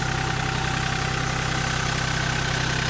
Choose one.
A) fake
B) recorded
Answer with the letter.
B